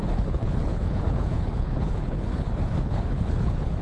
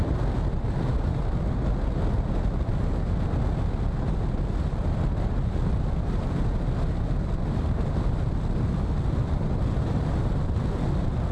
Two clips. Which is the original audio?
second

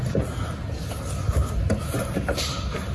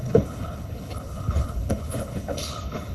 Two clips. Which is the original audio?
first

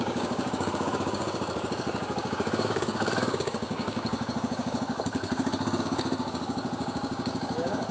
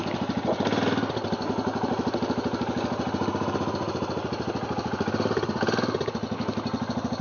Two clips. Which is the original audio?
second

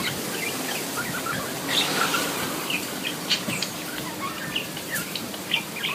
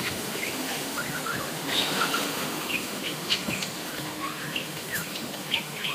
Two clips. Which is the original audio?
first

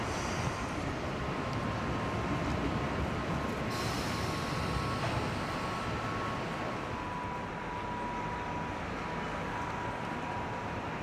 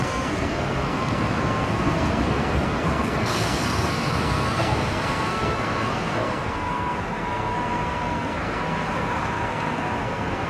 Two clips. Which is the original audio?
first